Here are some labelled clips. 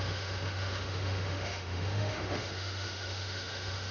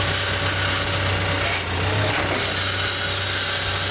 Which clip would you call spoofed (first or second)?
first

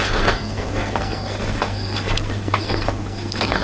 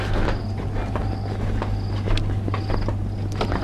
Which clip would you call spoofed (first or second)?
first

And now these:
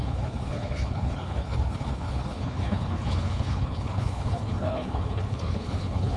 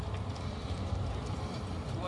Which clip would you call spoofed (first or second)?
first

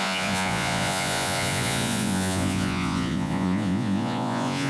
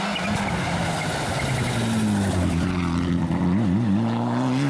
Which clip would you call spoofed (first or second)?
first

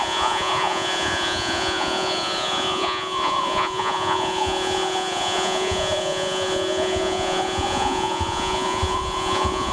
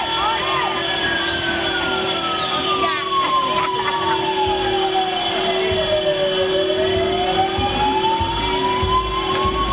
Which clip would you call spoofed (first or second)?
first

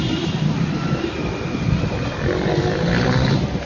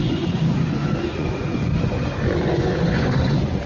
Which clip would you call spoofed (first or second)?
second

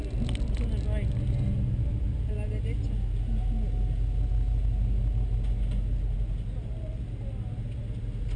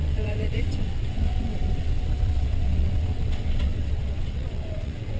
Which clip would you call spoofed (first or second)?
second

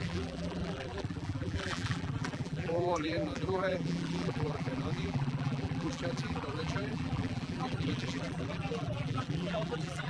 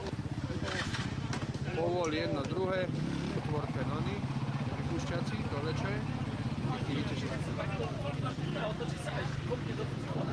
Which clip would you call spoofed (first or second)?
first